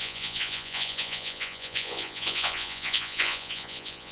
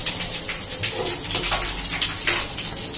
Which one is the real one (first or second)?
second